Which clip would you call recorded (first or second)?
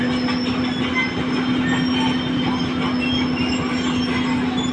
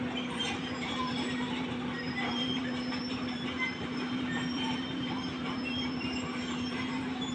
first